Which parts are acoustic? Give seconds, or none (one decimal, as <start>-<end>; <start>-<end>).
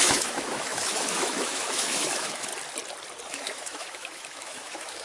2.5-3.3